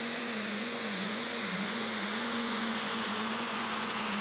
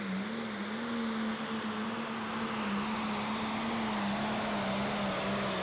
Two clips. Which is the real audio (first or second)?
second